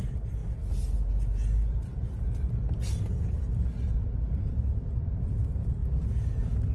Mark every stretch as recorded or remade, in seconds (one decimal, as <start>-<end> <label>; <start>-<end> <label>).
0.0-0.4 remade; 0.4-4.4 recorded; 4.4-5.8 remade; 5.8-6.7 recorded